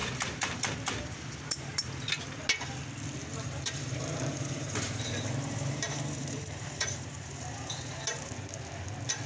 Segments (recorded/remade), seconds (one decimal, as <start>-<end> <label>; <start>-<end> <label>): 0.0-1.9 remade; 1.9-3.3 recorded; 3.3-8.3 remade; 8.3-9.3 recorded